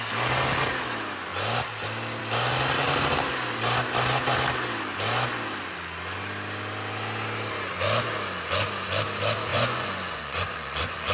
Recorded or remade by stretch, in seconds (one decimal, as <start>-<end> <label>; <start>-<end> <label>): 0.0-9.5 recorded; 9.5-11.1 remade